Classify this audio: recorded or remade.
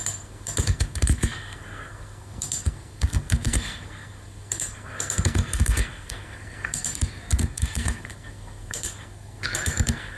remade